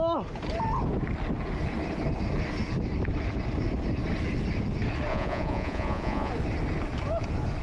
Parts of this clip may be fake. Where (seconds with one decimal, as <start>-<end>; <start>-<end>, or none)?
5.1-6.3